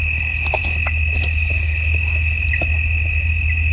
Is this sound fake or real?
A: real